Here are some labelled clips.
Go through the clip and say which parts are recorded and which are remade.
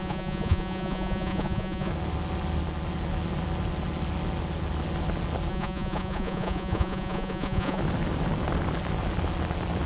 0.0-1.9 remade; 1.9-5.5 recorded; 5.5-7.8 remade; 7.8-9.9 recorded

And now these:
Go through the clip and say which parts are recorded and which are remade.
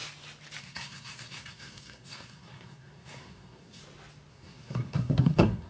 0.0-0.6 recorded; 0.6-3.8 remade; 3.8-4.3 recorded; 4.3-5.7 remade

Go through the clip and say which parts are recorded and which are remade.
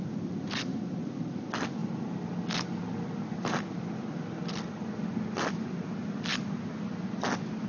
0.0-7.7 recorded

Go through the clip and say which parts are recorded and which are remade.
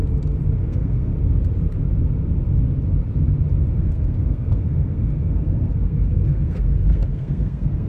0.0-0.6 recorded; 0.6-1.1 remade; 1.1-3.8 recorded; 3.8-7.9 remade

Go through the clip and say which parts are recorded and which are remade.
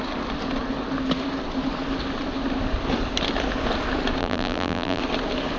0.0-4.2 recorded; 4.2-5.0 remade; 5.0-5.6 recorded